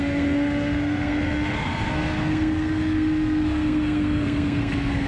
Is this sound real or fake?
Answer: fake